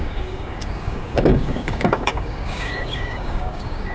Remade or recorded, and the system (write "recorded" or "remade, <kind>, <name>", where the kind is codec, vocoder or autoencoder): remade, codec, DAC